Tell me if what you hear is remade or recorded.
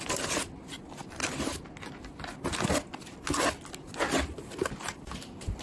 recorded